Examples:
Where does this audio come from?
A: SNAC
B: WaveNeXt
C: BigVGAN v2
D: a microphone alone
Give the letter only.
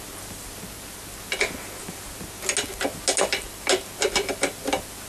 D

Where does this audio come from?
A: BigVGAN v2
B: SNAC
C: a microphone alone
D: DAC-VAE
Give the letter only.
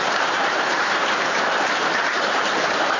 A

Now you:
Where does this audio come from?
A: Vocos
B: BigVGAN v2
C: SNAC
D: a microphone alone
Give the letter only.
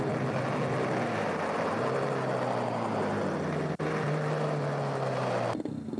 D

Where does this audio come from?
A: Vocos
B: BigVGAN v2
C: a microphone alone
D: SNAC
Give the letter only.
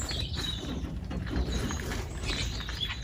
B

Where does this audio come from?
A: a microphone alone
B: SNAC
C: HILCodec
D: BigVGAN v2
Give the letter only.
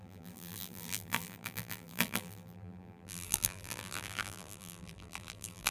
D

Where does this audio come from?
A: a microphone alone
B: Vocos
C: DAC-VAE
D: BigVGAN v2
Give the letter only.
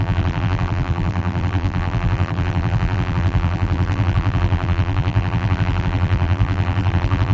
D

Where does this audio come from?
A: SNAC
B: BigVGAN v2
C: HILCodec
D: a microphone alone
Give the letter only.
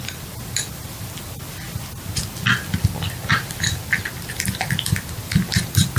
D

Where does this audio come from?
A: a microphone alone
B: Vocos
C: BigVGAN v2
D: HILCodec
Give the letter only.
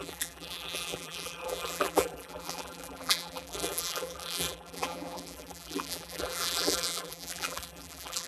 C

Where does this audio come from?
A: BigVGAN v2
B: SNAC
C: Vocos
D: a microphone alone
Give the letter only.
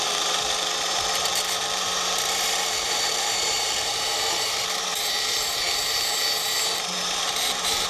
A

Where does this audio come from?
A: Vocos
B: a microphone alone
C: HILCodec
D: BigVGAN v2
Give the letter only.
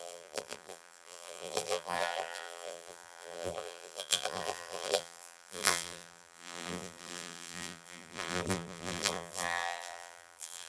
D